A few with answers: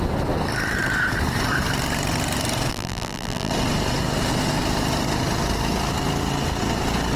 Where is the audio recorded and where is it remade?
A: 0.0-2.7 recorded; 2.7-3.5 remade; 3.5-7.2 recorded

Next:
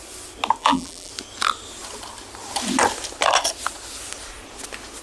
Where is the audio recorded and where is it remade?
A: 0.0-0.6 recorded; 0.6-1.1 remade; 1.1-5.0 recorded

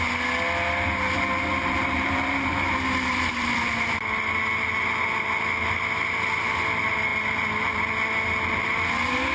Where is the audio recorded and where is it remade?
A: 0.0-1.6 recorded; 1.6-4.0 remade; 4.0-9.3 recorded

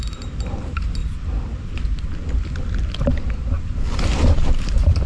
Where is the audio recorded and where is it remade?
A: 0.0-1.0 remade; 1.0-4.0 recorded; 4.0-5.1 remade

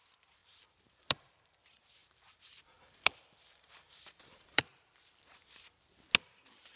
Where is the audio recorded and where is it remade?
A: 0.0-0.4 recorded; 0.4-1.5 remade; 1.5-2.0 recorded; 2.0-4.8 remade; 4.8-6.8 recorded

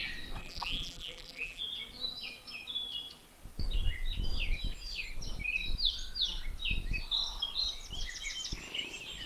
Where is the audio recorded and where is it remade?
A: 0.0-0.4 recorded; 0.4-1.6 remade; 1.6-9.3 recorded

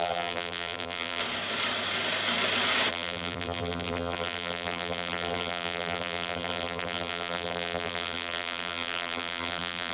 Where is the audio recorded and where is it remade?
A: 0.0-1.2 remade; 1.2-2.9 recorded; 2.9-9.9 remade

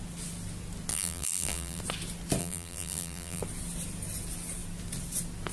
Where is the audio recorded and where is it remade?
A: 0.0-0.9 recorded; 0.9-1.8 remade; 1.8-2.4 recorded; 2.4-3.4 remade; 3.4-5.5 recorded